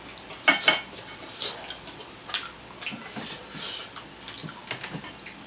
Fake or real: real